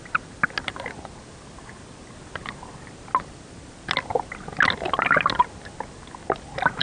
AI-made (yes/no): no